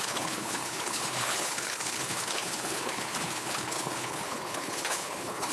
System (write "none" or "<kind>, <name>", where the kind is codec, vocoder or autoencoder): codec, HILCodec